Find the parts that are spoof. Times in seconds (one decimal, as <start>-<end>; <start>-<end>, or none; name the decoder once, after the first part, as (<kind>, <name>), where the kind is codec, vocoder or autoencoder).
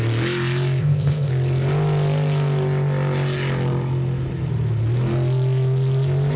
0.8-1.3 (codec, ZipCodec)